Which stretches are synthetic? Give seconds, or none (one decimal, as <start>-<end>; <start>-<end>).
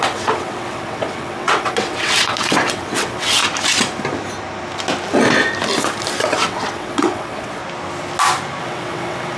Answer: 0.0-3.4; 6.2-7.6; 8.6-9.4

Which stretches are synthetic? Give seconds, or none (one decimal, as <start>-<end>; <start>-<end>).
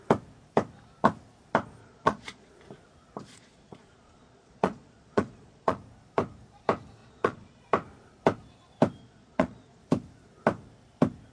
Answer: 1.8-2.5; 3.3-5.8; 7.0-7.6; 9.0-9.8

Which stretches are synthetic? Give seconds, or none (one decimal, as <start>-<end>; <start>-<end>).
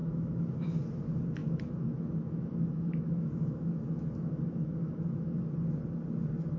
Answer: 0.0-0.8; 1.4-5.4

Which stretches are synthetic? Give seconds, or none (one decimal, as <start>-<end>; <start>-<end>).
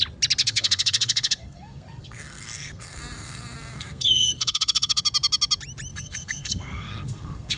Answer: 0.4-5.0; 5.9-7.6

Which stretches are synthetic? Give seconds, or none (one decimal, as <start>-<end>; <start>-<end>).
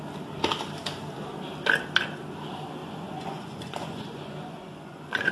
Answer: 2.8-5.3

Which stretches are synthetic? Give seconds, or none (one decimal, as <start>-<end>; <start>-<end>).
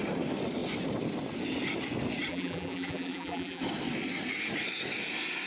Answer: 2.3-3.6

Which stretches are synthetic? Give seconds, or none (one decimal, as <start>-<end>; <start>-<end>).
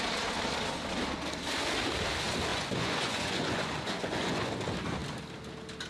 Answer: 2.5-4.5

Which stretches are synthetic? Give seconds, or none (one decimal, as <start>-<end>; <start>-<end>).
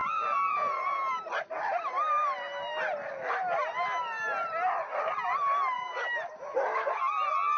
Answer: 0.0-1.2